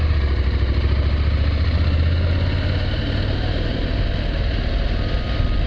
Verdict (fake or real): real